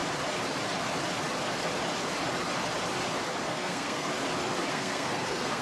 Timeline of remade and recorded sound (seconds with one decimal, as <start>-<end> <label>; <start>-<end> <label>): 0.0-3.4 recorded; 3.4-4.1 remade; 4.1-4.7 recorded; 4.7-5.6 remade